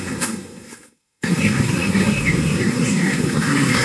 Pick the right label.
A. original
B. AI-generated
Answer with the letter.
B